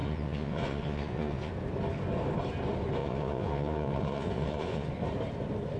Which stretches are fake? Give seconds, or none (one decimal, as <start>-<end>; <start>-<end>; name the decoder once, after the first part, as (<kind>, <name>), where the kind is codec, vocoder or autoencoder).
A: 0.0-1.5 (vocoder, Vocos); 3.0-4.9